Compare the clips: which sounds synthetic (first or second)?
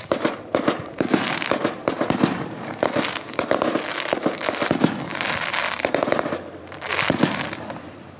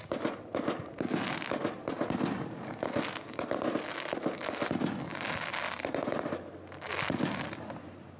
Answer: first